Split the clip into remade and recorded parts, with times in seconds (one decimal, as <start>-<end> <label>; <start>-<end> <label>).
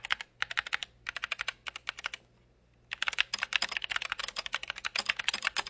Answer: 0.0-5.7 recorded